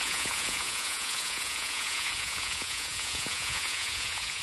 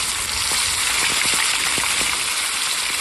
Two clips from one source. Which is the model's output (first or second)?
first